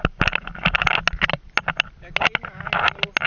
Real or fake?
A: real